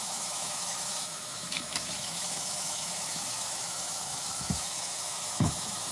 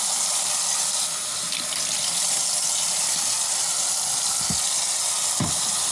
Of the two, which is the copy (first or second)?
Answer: first